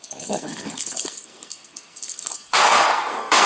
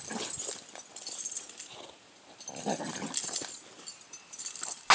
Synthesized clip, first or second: first